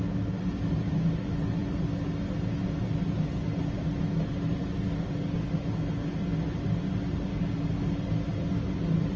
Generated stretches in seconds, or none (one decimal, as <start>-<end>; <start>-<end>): none